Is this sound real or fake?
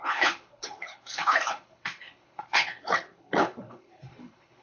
fake